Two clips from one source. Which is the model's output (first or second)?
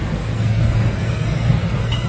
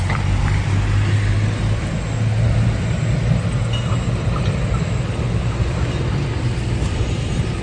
first